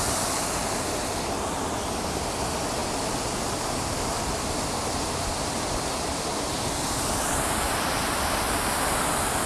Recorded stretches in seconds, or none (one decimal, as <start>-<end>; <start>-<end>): 0.0-9.5